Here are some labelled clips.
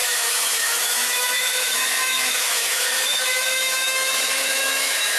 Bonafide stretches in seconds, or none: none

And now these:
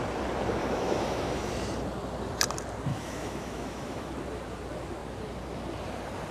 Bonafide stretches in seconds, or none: 0.0-0.6; 1.5-2.9; 4.1-6.3

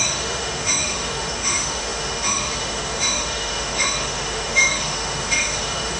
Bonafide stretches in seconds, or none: none

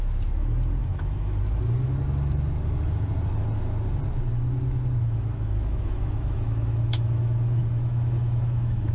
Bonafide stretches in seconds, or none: 0.0-0.8; 1.4-5.0

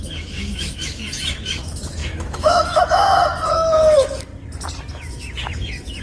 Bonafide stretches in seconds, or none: 4.3-4.9

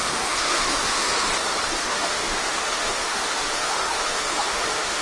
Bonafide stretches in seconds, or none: 1.3-1.8

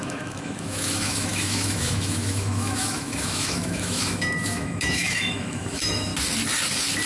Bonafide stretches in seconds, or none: 6.1-7.1